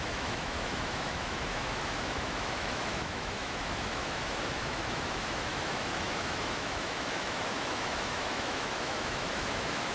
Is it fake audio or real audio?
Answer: fake